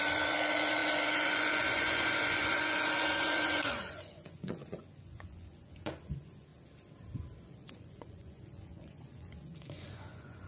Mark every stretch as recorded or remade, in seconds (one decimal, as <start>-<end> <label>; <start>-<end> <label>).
0.0-6.5 remade; 6.5-7.5 recorded; 7.5-10.5 remade